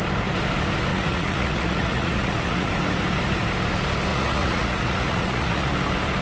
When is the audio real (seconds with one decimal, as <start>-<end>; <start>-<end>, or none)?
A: 0.0-0.9; 2.7-4.1; 5.7-6.2